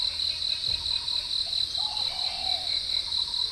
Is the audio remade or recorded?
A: recorded